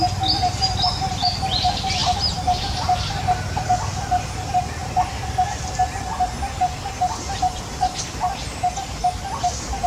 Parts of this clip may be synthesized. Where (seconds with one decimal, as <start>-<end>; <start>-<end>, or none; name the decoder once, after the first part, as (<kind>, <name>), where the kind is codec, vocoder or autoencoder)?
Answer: 2.0-3.2 (vocoder, BigVGAN v2)